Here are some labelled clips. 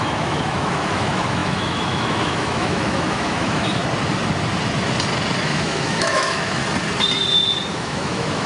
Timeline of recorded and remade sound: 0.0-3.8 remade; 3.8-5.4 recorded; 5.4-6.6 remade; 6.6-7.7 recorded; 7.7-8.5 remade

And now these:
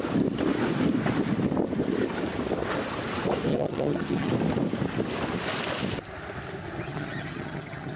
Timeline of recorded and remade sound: 0.0-3.5 recorded; 3.5-4.3 remade; 4.3-6.9 recorded; 6.9-8.0 remade

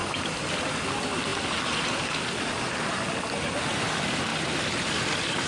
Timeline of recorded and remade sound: 0.0-5.5 recorded

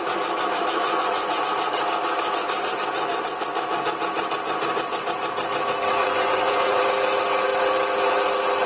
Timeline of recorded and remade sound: 0.0-0.8 recorded; 0.8-1.4 remade; 1.4-6.0 recorded; 6.0-6.8 remade; 6.8-8.7 recorded

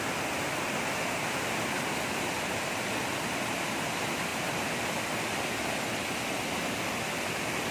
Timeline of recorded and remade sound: 0.0-7.7 recorded

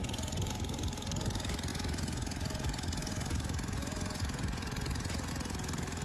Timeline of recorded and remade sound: 0.0-0.5 remade; 0.5-1.7 recorded; 1.7-5.3 remade; 5.3-6.0 recorded

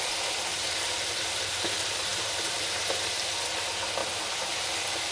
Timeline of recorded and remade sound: 0.0-0.5 recorded; 0.5-3.3 remade; 3.3-4.0 recorded; 4.0-4.5 remade; 4.5-5.1 recorded

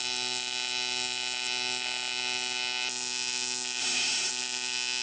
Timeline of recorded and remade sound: 0.0-3.8 recorded; 3.8-4.3 remade; 4.3-5.0 recorded